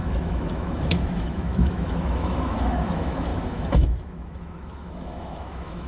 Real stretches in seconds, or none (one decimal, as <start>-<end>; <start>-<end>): none